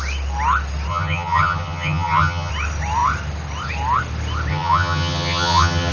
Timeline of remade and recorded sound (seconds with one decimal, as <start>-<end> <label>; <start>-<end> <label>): 0.0-0.9 recorded; 0.9-2.5 remade; 2.5-4.5 recorded; 4.5-5.9 remade